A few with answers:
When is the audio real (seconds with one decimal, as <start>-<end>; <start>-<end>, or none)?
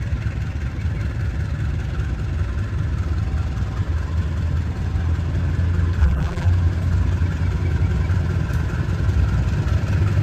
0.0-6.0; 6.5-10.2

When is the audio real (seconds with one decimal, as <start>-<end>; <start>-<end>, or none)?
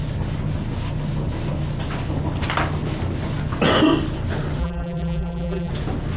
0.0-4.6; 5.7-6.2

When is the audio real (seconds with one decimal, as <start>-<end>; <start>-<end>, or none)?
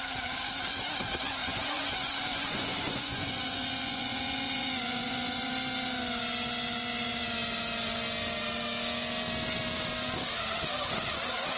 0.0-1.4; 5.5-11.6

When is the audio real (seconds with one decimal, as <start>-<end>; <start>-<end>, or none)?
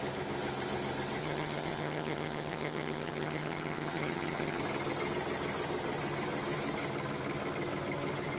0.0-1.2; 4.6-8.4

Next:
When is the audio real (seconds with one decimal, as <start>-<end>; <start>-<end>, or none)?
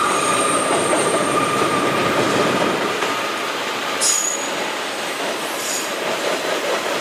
4.0-5.5